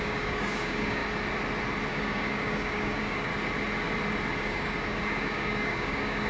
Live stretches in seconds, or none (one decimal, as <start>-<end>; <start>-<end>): 1.0-1.9; 3.3-4.4